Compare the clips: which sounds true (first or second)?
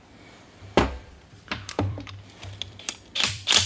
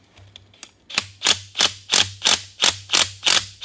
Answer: second